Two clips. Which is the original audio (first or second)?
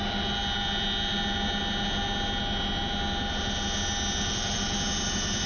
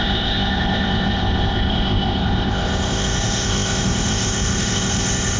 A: first